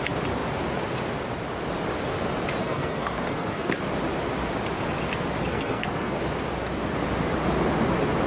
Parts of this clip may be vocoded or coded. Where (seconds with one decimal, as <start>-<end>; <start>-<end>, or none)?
2.6-3.8; 5.4-6.2